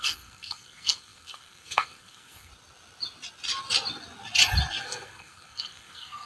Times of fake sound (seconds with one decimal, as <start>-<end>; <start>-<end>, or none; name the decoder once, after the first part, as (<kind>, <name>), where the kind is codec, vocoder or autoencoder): 0.0-2.5 (codec, SNAC); 4.8-6.3